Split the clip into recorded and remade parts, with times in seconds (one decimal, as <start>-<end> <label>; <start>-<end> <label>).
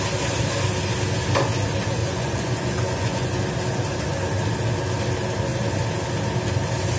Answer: 0.0-2.0 recorded; 2.0-3.4 remade; 3.4-7.0 recorded